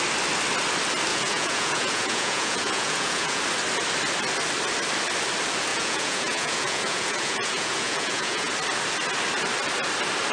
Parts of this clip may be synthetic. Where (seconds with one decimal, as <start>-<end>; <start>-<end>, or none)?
1.1-3.4; 5.7-8.5